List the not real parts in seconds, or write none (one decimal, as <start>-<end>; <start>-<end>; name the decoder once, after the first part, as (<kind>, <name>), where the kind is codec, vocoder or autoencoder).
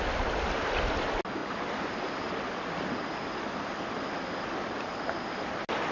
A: none